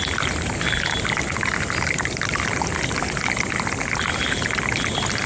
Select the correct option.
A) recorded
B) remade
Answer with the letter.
A